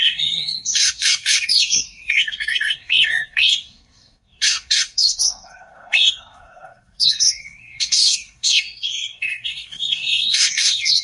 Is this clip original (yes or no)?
no